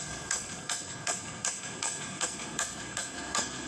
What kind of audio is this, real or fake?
fake